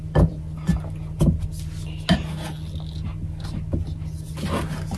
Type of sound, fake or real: real